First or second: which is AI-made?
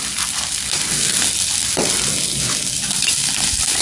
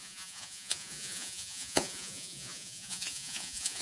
second